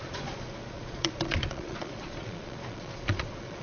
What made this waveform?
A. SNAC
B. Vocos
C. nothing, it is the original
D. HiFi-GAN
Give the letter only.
B